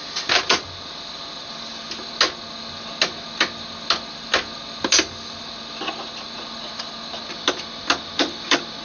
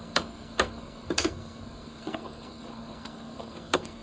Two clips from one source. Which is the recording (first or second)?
first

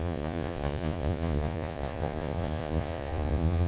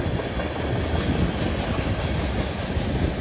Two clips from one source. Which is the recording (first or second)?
second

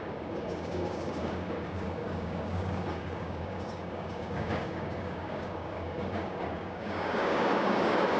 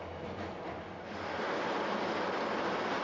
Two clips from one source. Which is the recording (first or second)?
second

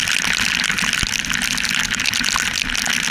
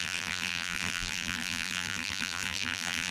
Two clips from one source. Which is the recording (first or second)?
first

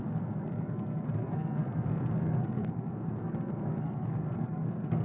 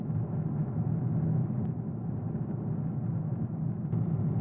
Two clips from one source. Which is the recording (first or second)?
second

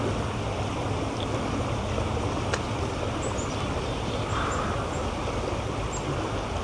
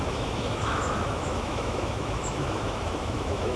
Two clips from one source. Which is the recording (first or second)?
first